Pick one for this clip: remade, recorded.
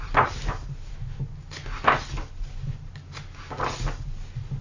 recorded